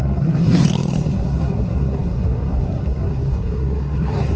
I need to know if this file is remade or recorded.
remade